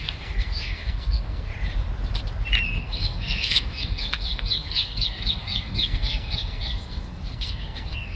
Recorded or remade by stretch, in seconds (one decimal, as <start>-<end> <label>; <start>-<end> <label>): 0.0-1.5 remade; 1.5-2.8 recorded; 2.8-8.2 remade